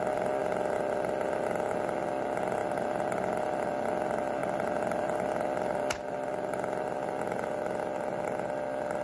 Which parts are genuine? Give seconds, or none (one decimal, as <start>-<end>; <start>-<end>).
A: 0.0-9.0